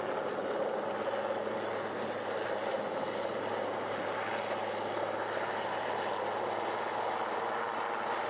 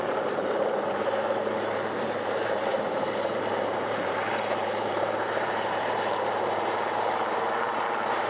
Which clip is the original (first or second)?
first